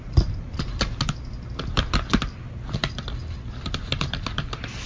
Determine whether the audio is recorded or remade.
recorded